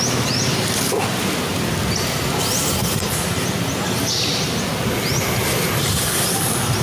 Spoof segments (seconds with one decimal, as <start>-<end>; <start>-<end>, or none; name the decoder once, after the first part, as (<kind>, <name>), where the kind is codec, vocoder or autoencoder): none